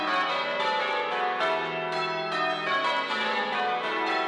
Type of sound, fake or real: real